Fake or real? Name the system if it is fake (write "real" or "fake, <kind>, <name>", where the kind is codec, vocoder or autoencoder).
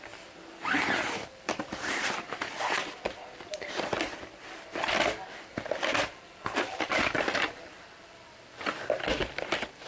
fake, vocoder, BigVGAN v2